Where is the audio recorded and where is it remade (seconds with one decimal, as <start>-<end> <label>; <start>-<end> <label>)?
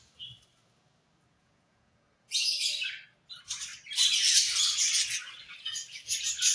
0.0-1.4 recorded; 1.4-2.5 remade; 2.5-6.5 recorded